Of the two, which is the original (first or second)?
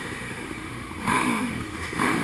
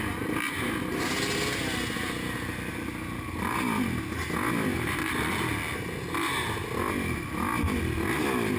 second